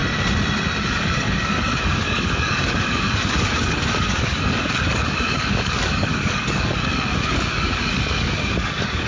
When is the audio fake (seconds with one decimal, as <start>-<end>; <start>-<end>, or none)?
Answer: 0.8-9.1